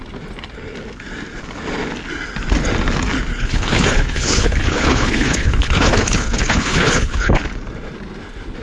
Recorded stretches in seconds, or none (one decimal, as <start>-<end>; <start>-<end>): 0.0-3.3; 7.4-8.6